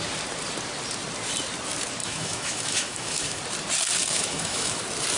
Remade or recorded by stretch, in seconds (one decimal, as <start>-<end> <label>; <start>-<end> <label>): 0.0-2.0 recorded; 2.0-3.4 remade; 3.4-4.0 recorded; 4.0-4.8 remade; 4.8-5.2 recorded